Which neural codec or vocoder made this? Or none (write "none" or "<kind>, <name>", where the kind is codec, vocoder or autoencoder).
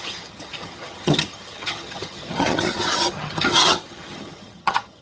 vocoder, HiFi-GAN